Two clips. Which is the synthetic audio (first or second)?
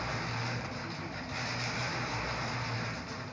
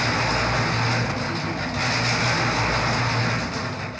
first